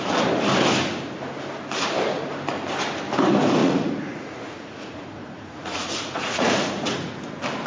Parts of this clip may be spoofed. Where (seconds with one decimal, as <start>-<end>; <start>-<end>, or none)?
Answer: 3.6-7.3